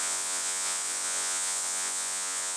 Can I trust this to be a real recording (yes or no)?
no